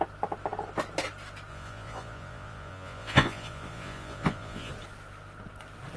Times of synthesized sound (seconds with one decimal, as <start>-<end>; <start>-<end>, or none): 1.5-4.7